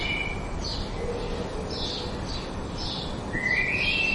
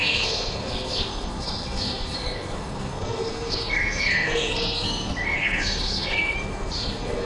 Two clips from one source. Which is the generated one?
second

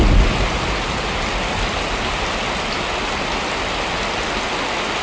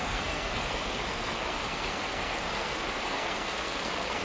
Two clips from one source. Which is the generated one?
second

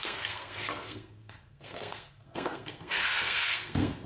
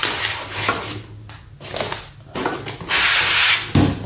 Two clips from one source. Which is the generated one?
first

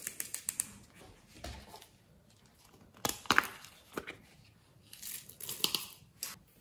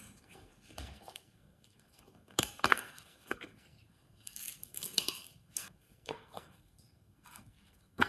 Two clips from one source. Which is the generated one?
second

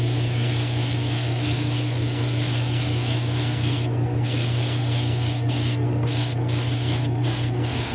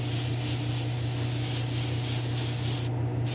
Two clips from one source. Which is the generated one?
first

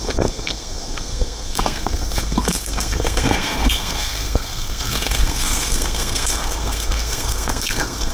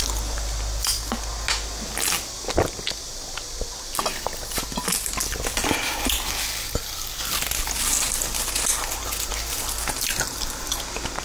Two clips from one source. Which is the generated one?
first